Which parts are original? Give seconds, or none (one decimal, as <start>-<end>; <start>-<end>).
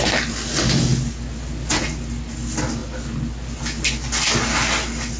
0.0-5.2